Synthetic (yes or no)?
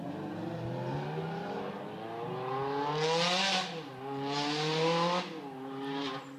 no